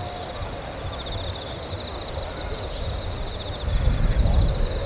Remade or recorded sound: recorded